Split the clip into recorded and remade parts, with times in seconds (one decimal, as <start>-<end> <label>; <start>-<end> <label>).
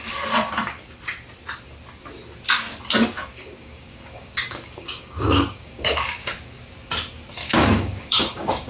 0.0-3.3 recorded; 3.3-6.7 remade; 6.7-7.4 recorded; 7.4-8.7 remade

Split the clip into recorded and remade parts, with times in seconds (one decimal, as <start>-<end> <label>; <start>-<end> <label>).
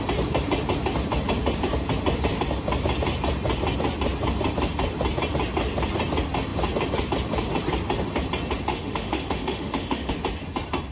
0.0-8.7 recorded; 8.7-10.1 remade; 10.1-10.9 recorded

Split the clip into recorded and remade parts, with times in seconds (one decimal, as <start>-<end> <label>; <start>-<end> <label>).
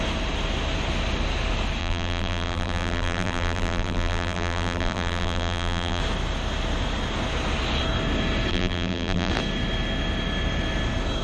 0.0-1.8 recorded; 1.8-6.0 remade; 6.0-8.5 recorded; 8.5-9.3 remade; 9.3-11.2 recorded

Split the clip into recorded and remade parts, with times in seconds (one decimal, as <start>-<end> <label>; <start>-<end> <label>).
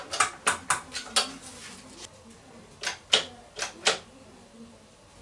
0.0-5.2 recorded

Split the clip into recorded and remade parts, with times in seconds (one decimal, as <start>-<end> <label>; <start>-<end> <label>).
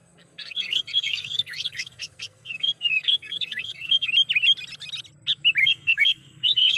0.0-4.1 remade; 4.1-5.6 recorded; 5.6-6.8 remade